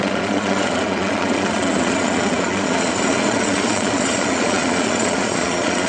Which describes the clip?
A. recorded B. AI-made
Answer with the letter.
B